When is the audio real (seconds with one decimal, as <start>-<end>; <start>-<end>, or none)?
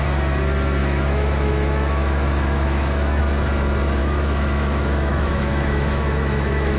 0.0-0.8; 3.2-4.0